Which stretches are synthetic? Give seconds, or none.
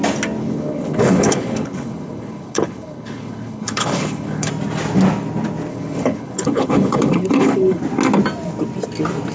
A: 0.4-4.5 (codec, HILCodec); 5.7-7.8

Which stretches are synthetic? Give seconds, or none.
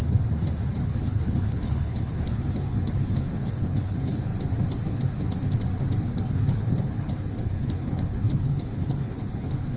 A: 0.7-4.3 (codec, HILCodec); 6.0-9.8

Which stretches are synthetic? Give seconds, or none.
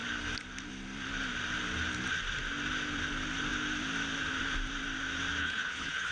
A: 5.4-6.1 (codec, HILCodec)